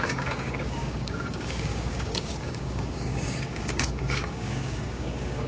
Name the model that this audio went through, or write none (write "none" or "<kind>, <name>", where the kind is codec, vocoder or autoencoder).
codec, DAC